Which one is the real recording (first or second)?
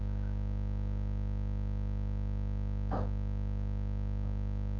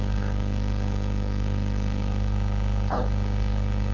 first